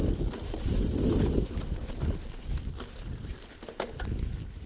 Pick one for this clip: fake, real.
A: real